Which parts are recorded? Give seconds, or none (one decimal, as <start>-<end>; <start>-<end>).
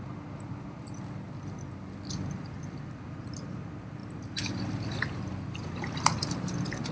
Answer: 0.0-6.9